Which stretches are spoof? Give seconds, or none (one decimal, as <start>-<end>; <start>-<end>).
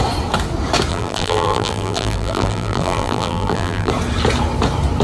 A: 0.9-3.9